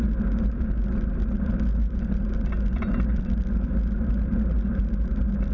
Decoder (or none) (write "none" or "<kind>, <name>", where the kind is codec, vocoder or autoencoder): none